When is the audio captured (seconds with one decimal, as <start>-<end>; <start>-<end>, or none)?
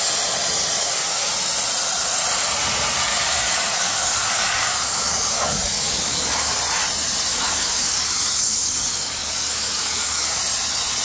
0.0-0.8; 1.3-3.1; 6.5-7.3; 10.4-11.0